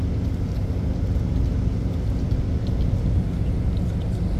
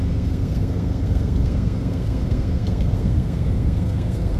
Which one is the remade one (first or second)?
second